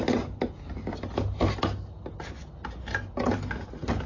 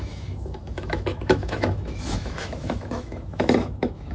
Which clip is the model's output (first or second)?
second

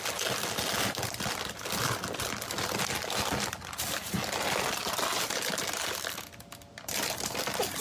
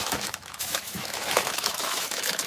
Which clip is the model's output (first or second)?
second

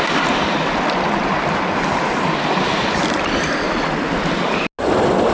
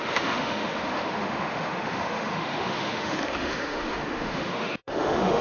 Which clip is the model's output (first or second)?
second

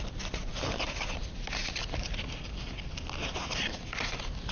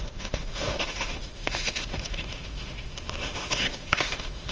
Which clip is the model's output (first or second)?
second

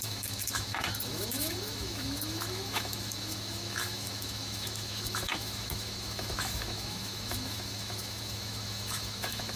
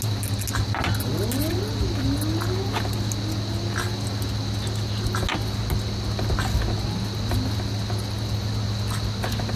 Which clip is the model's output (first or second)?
first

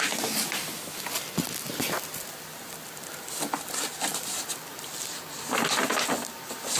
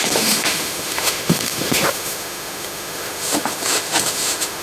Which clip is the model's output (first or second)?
second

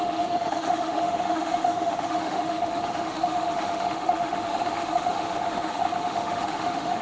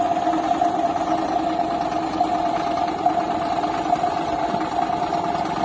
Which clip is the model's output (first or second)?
first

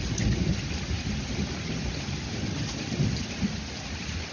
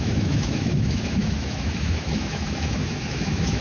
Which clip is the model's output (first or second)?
second